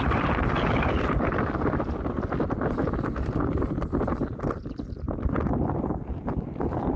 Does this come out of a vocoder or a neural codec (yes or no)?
no